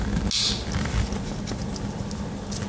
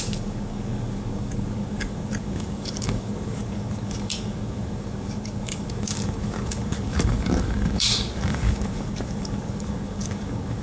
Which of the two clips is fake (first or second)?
second